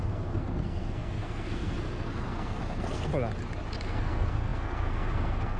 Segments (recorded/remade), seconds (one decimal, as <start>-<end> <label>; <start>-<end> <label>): 0.0-3.1 remade; 3.1-3.8 recorded; 3.8-5.6 remade